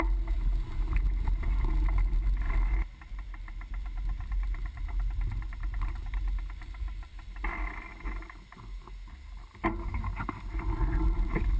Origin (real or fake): real